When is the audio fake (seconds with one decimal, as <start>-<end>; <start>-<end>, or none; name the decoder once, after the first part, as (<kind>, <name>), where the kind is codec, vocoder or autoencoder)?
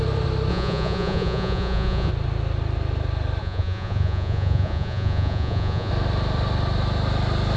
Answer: 0.5-2.1 (vocoder, Vocos); 3.4-5.9